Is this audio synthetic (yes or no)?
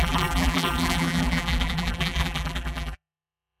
yes